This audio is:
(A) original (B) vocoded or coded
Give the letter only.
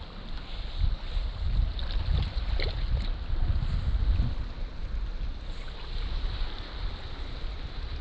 A